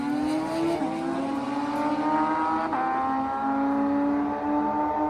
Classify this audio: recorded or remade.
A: recorded